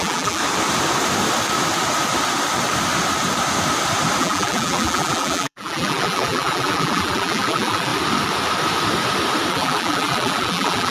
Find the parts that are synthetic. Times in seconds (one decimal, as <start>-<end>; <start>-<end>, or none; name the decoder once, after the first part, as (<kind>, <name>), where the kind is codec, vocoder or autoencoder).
0.0-0.4 (vocoder, BigVGAN v2); 4.2-7.9; 9.5-10.9